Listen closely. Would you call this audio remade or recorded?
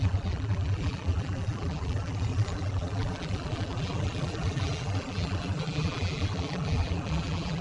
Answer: remade